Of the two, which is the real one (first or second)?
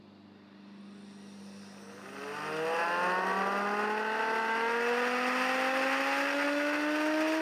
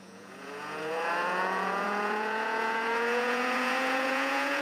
first